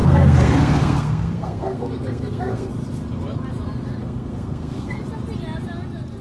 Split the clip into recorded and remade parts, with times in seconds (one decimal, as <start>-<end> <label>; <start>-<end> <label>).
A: 0.0-2.7 remade; 2.7-4.0 recorded; 4.0-5.0 remade; 5.0-6.2 recorded